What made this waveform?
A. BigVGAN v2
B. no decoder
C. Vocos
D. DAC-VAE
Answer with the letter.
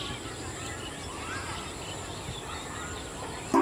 B